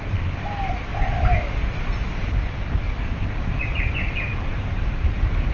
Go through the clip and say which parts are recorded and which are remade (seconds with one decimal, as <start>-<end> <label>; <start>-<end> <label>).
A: 0.0-5.5 recorded